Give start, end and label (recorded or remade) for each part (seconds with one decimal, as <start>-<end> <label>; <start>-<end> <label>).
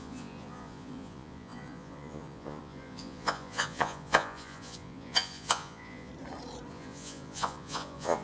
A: 0.0-6.1 remade; 6.1-6.7 recorded; 6.7-8.2 remade